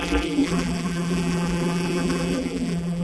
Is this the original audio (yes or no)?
no